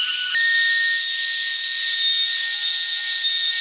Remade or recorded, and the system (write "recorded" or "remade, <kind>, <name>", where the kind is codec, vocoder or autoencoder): recorded